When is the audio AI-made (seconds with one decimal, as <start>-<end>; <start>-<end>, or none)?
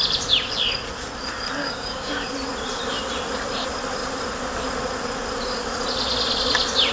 1.6-2.1